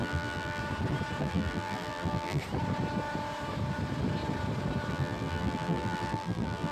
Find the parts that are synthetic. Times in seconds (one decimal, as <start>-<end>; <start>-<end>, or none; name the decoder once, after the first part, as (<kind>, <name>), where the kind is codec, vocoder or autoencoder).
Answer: 0.0-0.6 (vocoder, BigVGAN v2); 1.2-2.4; 4.9-6.7